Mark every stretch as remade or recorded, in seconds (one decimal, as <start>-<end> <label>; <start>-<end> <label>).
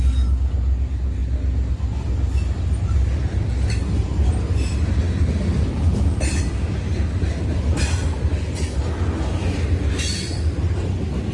0.0-11.3 recorded